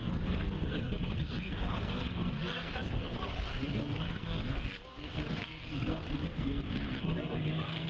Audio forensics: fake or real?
fake